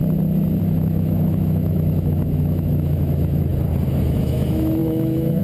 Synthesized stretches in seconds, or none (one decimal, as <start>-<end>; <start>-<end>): 0.6-3.5; 4.0-5.4